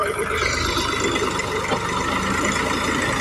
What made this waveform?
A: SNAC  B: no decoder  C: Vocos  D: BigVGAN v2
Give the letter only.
B